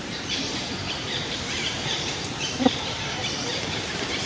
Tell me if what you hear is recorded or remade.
remade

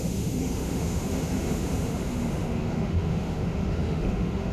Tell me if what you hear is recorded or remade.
remade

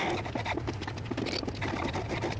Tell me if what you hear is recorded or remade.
recorded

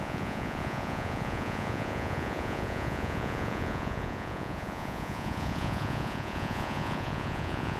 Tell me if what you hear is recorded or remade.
remade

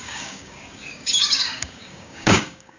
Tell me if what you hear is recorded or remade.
remade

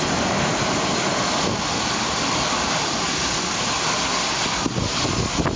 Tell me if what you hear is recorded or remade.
recorded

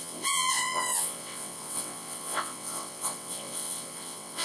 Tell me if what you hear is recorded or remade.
remade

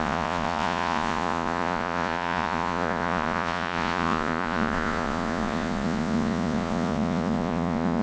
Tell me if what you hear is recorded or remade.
remade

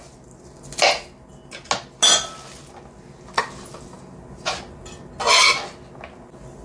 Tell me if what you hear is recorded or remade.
recorded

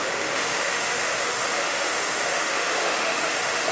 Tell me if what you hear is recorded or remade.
remade